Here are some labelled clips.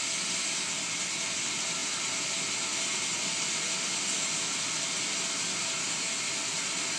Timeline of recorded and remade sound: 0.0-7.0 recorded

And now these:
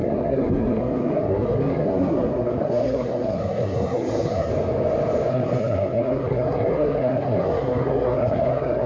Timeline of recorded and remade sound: 0.0-4.5 remade; 4.5-5.3 recorded; 5.3-8.9 remade

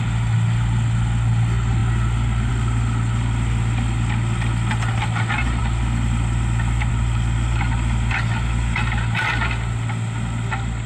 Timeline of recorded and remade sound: 0.0-10.9 recorded

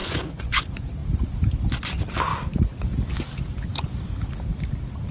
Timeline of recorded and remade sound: 0.0-0.6 remade; 0.6-5.1 recorded

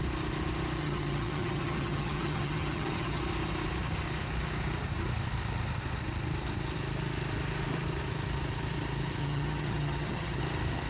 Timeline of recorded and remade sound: 0.0-0.8 recorded; 0.8-3.2 remade; 3.2-9.2 recorded; 9.2-10.4 remade; 10.4-10.9 recorded

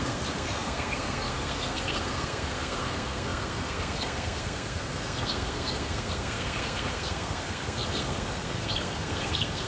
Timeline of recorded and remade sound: 0.0-9.7 remade

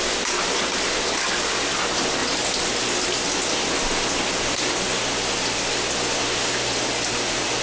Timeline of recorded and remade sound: 0.0-7.6 recorded